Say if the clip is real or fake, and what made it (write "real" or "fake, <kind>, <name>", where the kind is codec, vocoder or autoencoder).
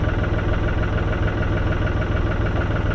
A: real